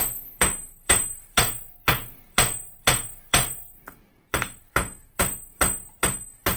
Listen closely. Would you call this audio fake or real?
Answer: fake